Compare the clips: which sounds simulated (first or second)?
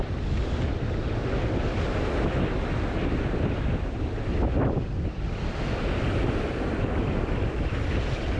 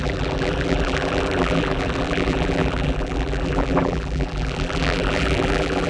second